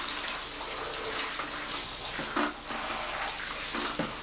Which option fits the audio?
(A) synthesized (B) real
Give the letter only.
B